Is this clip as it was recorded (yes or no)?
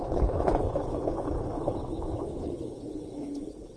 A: no